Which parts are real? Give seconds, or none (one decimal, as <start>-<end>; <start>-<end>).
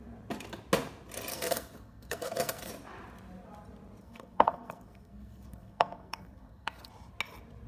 0.0-1.3; 2.7-4.0; 6.9-7.7